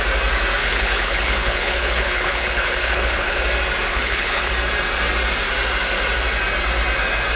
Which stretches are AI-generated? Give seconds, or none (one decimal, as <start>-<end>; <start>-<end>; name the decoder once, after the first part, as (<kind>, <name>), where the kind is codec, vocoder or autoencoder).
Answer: 0.6-3.4 (codec, HILCodec); 3.9-4.5